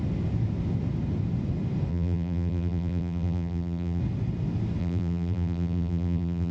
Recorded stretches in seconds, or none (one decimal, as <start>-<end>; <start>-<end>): 0.0-1.9; 4.0-4.8